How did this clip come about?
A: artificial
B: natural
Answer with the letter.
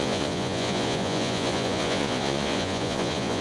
A